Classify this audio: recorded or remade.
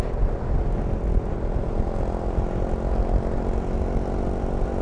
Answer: recorded